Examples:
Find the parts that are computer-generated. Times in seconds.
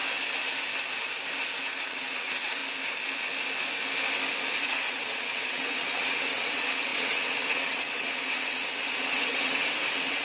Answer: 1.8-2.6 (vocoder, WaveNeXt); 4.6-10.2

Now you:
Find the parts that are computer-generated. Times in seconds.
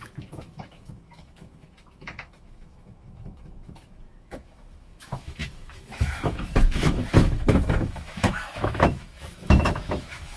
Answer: 0.0-10.4 (autoencoder, DAC-VAE)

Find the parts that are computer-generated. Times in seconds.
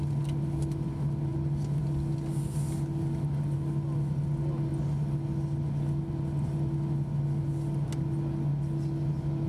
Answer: none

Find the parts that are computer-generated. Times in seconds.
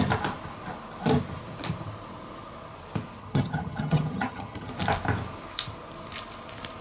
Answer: 3.2-4.7 (vocoder, HiFi-GAN)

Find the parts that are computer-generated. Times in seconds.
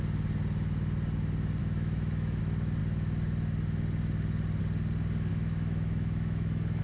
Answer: 1.6-2.4 (autoencoder, DAC-VAE); 5.3-6.8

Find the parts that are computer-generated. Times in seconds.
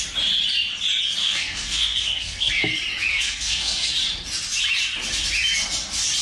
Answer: 1.2-2.5 (codec, SNAC); 3.1-3.9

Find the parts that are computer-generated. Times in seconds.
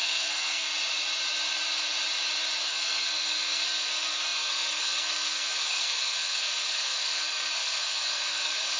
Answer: 0.0-0.7 (codec, SNAC); 2.7-8.8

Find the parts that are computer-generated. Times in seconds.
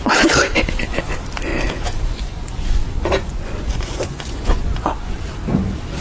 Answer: 1.5-5.1 (vocoder, Vocos)